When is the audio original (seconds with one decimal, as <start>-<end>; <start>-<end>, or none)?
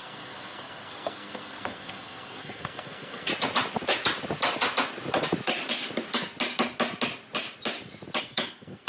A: 3.3-8.2